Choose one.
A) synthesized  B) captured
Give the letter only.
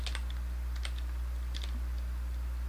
B